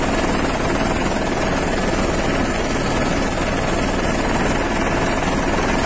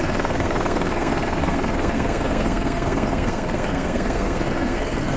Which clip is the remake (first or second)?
second